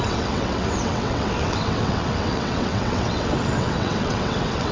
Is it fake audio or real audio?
fake